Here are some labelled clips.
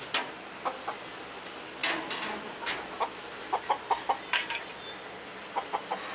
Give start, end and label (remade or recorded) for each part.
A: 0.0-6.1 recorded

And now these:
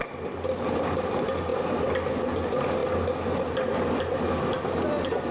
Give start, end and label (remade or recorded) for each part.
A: 0.0-5.3 recorded

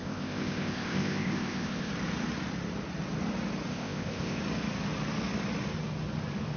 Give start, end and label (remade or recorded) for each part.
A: 0.0-1.9 remade; 1.9-3.7 recorded; 3.7-4.4 remade; 4.4-6.6 recorded

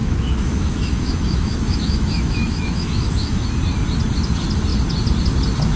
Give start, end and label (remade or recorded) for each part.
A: 0.0-3.5 remade; 3.5-5.8 recorded